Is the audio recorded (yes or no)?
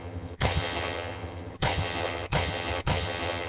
no